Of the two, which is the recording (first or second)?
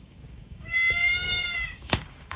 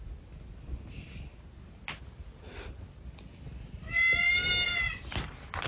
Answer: second